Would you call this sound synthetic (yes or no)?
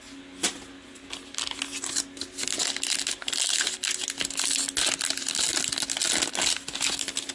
no